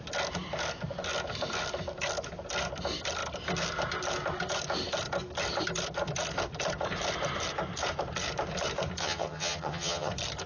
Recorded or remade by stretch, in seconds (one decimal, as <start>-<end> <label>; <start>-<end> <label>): 0.0-9.0 recorded; 9.0-10.1 remade; 10.1-10.5 recorded